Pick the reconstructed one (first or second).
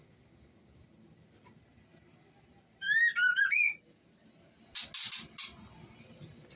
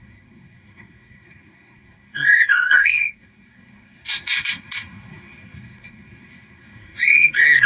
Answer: second